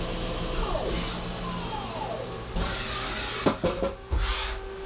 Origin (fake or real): real